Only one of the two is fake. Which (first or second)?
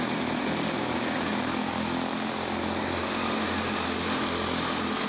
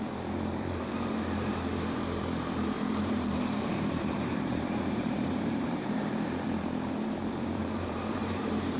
second